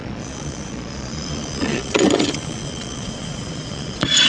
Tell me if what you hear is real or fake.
fake